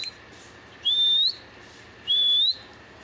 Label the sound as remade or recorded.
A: recorded